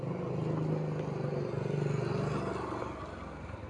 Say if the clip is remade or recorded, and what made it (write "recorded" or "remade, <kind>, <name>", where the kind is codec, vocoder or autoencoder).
recorded